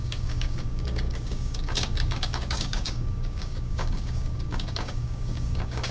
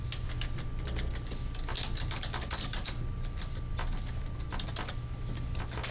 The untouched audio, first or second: second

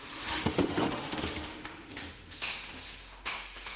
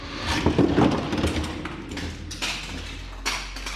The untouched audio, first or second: second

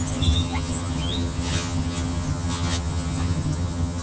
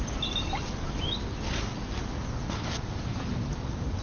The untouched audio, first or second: second